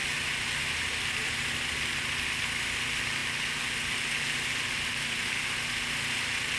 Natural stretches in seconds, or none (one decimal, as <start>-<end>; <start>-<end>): 0.0-6.6